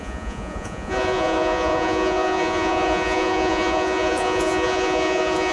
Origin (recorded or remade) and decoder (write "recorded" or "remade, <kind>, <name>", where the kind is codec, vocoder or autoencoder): remade, vocoder, Vocos